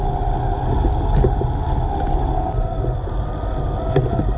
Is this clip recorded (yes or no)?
yes